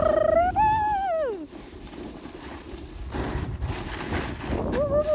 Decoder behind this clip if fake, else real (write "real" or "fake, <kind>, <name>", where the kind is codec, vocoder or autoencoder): real